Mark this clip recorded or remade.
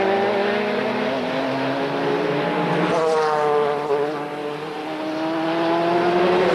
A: recorded